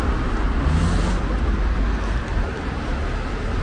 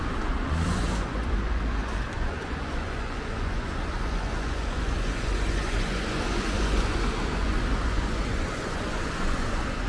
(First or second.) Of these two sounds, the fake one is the second